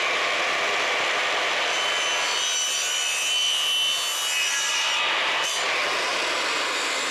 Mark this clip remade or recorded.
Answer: recorded